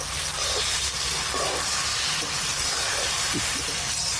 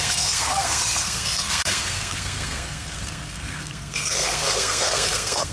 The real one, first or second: first